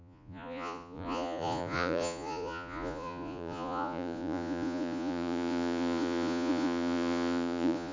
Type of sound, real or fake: fake